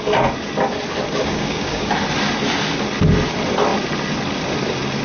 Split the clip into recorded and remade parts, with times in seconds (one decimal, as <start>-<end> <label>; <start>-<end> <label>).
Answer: 0.0-1.2 recorded; 1.2-1.9 remade; 1.9-5.0 recorded